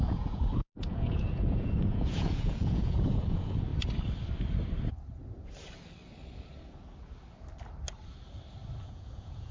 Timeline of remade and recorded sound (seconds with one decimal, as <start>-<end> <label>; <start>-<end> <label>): 0.0-3.7 remade; 3.7-8.8 recorded; 8.8-9.5 remade